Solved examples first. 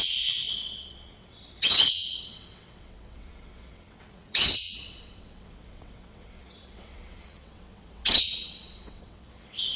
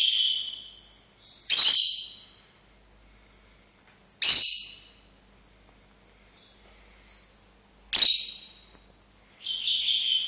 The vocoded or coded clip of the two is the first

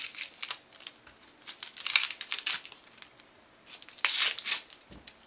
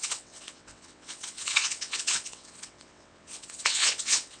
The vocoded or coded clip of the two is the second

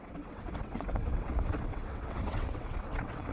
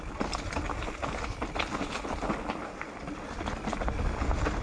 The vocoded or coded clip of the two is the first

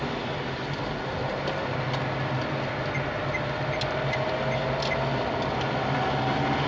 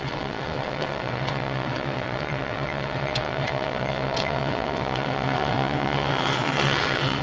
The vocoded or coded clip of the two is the second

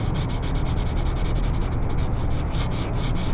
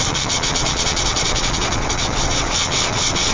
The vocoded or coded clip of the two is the second